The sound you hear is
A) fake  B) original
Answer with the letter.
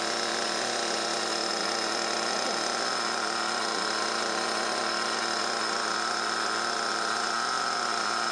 B